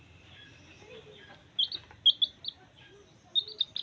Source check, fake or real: real